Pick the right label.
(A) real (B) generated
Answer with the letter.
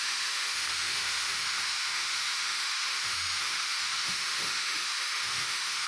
B